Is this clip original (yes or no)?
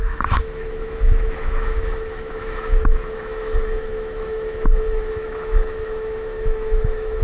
no